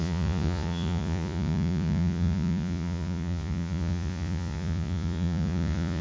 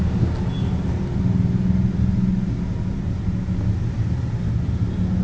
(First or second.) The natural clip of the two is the second